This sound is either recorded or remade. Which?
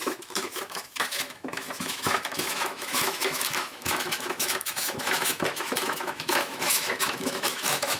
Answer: remade